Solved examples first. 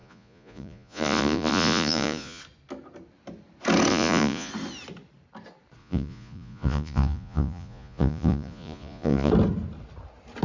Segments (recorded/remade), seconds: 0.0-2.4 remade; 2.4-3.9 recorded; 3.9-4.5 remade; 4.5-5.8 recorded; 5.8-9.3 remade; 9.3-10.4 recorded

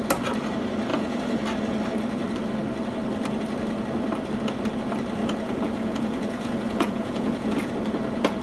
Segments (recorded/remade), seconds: 0.0-0.9 recorded; 0.9-1.4 remade; 1.4-5.2 recorded; 5.2-7.7 remade; 7.7-8.4 recorded